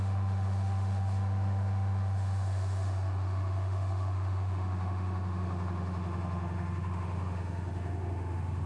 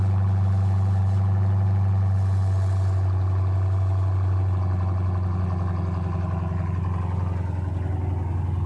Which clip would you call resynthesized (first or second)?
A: first